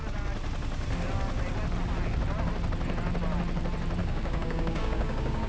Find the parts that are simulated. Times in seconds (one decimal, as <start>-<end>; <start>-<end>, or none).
4.0-5.5